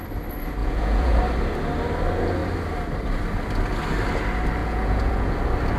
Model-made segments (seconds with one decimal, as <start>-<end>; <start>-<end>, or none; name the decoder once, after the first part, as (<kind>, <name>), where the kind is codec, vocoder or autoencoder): 0.6-1.2 (vocoder, Vocos); 4.6-5.3